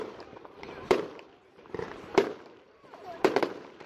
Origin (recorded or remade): remade